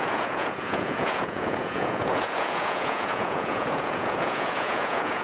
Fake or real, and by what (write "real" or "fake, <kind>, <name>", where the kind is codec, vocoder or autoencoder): fake, vocoder, Vocos